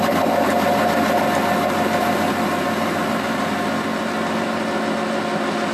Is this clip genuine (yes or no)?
yes